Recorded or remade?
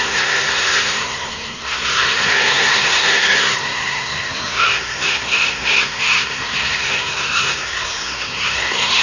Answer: remade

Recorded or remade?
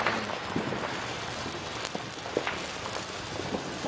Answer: recorded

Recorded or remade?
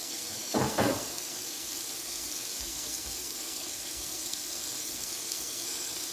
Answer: remade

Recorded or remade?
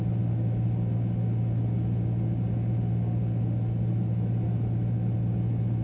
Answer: recorded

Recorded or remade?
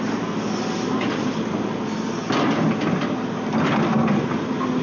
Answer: recorded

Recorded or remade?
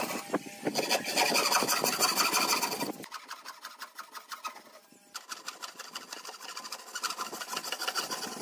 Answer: recorded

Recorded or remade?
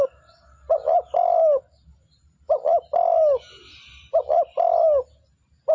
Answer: recorded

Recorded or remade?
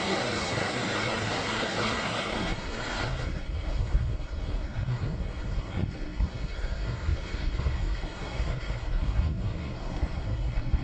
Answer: remade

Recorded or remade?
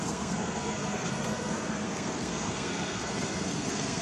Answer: remade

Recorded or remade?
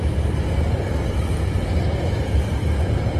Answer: recorded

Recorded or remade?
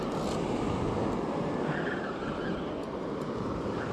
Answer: recorded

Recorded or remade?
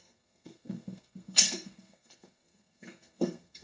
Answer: remade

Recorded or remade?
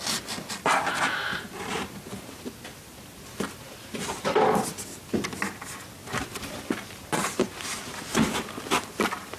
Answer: recorded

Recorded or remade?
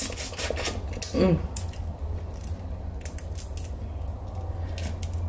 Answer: recorded